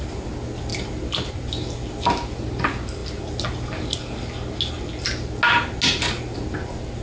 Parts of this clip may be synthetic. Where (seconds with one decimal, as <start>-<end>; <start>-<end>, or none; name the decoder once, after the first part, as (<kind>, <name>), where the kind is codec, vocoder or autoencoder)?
none